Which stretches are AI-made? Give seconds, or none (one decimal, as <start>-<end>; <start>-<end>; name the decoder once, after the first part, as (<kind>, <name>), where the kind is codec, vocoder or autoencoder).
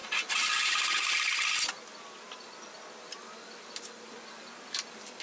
none